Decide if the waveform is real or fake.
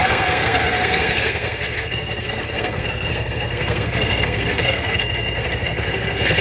fake